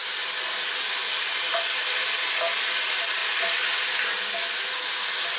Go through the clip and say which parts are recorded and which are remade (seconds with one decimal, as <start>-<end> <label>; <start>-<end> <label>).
0.0-5.4 recorded

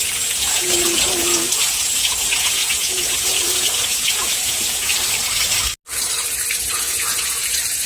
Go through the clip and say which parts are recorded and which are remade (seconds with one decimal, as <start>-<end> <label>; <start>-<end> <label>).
0.0-4.9 remade; 4.9-6.6 recorded; 6.6-7.9 remade